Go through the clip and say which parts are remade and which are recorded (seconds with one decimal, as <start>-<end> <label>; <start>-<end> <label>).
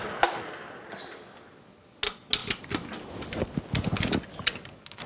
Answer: 0.0-5.1 recorded